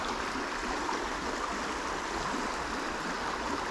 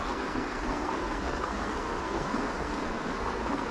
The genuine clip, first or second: first